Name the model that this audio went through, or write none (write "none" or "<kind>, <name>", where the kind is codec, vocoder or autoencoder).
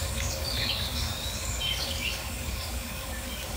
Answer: codec, DAC